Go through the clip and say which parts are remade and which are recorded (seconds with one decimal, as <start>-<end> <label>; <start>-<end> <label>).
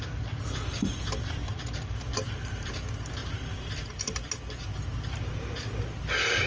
0.0-2.1 recorded; 2.1-2.7 remade; 2.7-3.2 recorded; 3.2-4.3 remade; 4.3-6.5 recorded